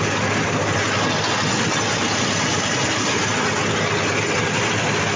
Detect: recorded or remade recorded